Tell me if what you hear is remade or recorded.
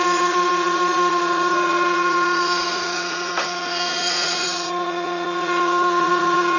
remade